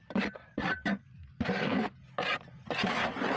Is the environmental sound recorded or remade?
recorded